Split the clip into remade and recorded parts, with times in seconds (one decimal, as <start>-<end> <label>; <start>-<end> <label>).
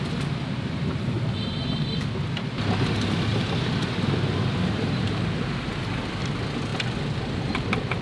0.0-8.0 recorded